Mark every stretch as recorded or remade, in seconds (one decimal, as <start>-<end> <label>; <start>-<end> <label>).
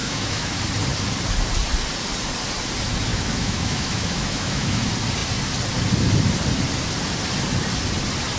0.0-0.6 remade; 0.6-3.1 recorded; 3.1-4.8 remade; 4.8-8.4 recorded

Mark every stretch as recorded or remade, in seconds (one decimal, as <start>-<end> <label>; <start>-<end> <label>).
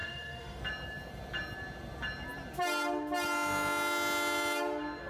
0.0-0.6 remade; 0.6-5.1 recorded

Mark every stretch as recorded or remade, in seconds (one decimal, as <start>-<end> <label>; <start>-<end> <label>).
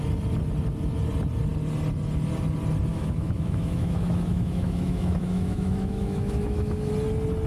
0.0-2.9 recorded; 2.9-6.9 remade; 6.9-7.5 recorded